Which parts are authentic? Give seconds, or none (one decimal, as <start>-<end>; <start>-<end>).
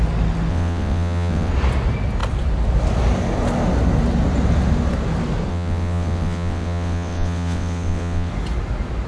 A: 0.0-0.5; 1.5-5.5; 8.3-9.1